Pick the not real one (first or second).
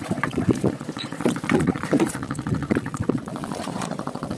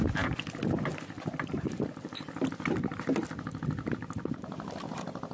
first